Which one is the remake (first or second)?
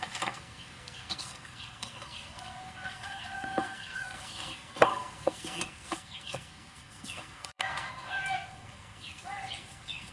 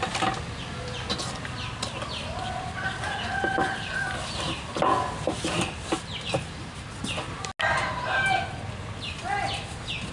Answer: first